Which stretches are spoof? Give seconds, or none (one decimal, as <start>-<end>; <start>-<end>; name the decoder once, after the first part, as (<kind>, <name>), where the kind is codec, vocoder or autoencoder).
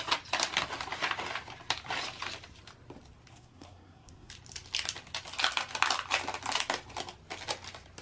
3.3-4.3 (codec, SNAC)